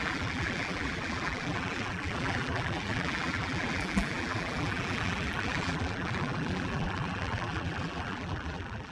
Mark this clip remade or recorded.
remade